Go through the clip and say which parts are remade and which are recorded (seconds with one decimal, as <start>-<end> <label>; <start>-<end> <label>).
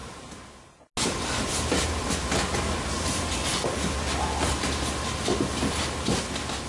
0.0-6.7 recorded